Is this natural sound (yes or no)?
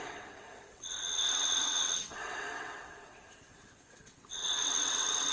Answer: no